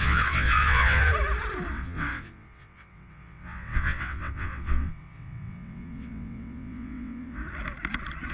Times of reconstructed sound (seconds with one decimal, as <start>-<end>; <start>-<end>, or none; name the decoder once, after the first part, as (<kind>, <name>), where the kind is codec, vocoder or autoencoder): 0.0-1.1 (vocoder, WaveNeXt); 1.7-7.4